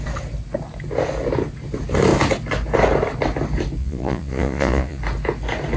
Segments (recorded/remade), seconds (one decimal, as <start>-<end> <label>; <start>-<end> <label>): 0.0-3.8 recorded; 3.8-5.0 remade; 5.0-5.8 recorded